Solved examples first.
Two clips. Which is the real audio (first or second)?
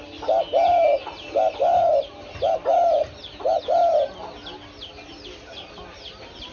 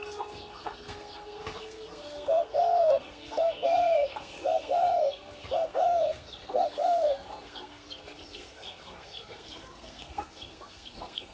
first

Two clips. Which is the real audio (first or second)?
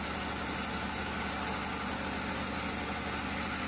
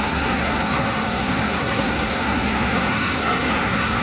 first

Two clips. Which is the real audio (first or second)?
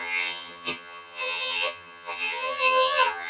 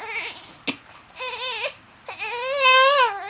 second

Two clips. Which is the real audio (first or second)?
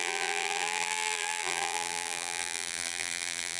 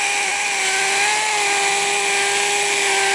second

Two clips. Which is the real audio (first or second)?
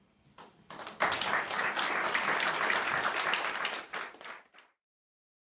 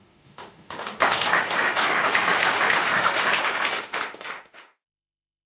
first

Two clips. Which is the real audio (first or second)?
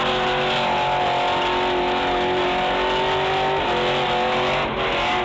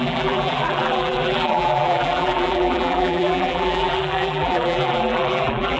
first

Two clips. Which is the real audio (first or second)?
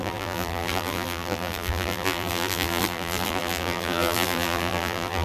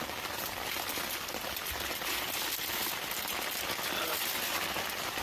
second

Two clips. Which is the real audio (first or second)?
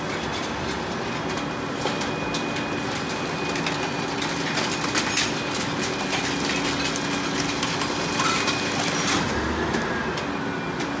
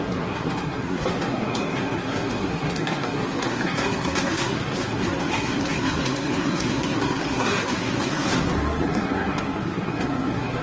first